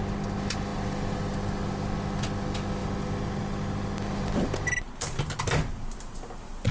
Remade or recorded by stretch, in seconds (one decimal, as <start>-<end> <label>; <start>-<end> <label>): 0.0-6.7 recorded